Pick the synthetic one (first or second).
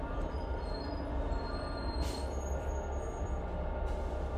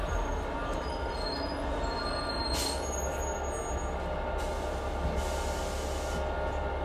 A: first